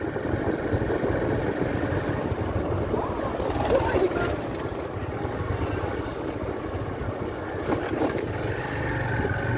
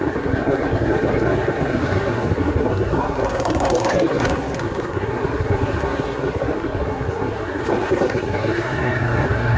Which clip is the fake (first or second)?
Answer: second